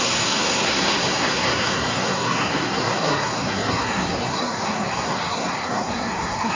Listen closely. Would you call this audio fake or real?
fake